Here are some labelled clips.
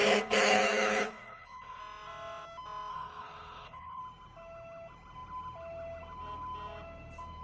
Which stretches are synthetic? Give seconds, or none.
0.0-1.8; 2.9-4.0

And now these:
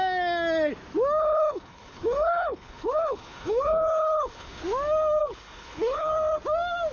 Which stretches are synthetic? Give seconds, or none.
1.2-4.6; 5.2-6.1

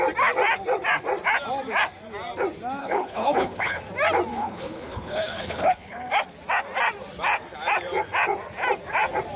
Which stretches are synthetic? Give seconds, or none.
2.8-3.8; 4.3-6.1

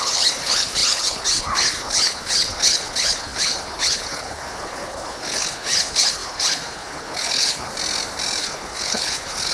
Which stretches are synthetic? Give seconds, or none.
0.0-7.7; 8.4-9.5

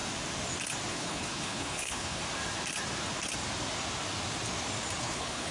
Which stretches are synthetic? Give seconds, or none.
0.9-2.2; 5.0-5.5